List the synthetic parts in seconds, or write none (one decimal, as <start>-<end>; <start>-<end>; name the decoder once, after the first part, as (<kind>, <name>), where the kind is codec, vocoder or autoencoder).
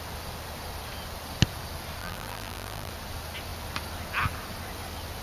2.0-2.9 (vocoder, BigVGAN v2)